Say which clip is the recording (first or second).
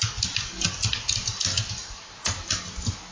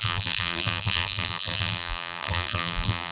first